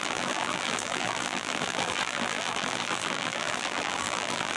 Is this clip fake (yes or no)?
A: yes